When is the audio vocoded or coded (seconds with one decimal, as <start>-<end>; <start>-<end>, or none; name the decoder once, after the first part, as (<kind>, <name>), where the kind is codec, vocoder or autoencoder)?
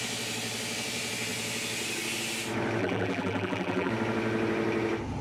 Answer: 2.8-3.9 (vocoder, BigVGAN v2)